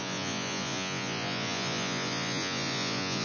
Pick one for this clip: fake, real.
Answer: fake